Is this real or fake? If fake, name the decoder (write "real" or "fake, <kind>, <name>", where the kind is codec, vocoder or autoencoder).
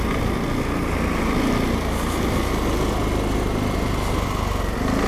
real